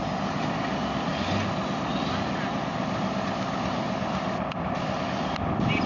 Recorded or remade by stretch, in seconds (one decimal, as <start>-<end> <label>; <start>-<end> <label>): 0.0-5.9 recorded